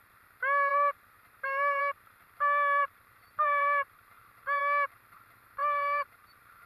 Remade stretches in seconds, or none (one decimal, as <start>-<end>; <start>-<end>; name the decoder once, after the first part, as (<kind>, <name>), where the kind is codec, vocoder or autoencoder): 0.7-1.8 (vocoder, BigVGAN v2); 2.8-4.6; 5.6-6.7